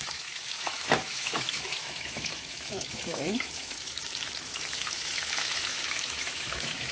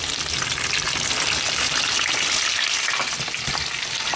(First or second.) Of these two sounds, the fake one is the first